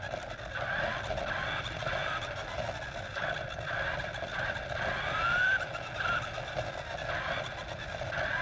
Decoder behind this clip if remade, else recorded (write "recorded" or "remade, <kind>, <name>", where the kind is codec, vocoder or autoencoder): recorded